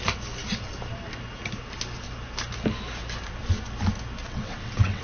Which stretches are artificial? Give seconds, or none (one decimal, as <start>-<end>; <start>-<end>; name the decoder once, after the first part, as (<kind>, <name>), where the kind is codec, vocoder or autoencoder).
4.2-5.0 (vocoder, WaveNeXt)